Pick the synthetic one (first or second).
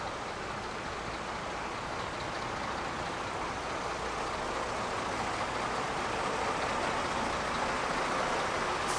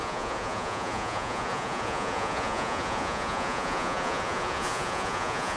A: second